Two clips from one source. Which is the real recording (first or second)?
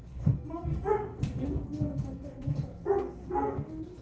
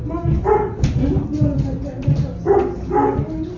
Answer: second